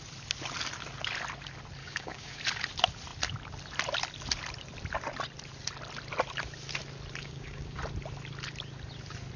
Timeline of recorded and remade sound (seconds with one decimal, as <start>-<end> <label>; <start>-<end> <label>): 0.0-1.8 recorded; 1.8-2.4 remade; 2.4-7.2 recorded; 7.2-7.8 remade; 7.8-9.4 recorded